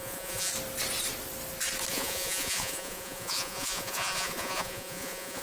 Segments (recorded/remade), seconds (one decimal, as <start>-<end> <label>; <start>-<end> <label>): 0.0-0.5 remade; 0.5-1.9 recorded; 1.9-5.4 remade